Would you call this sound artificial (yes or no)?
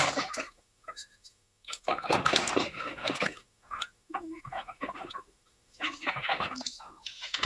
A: yes